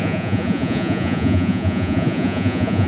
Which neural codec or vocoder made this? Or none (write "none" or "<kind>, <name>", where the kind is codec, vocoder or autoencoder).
vocoder, Vocos